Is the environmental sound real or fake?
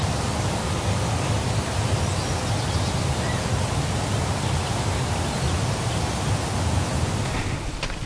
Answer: real